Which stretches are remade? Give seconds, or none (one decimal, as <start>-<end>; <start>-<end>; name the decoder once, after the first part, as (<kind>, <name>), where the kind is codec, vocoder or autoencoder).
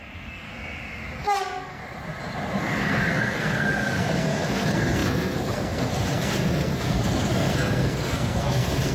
0.0-0.5 (codec, SNAC); 1.2-1.8; 2.6-8.9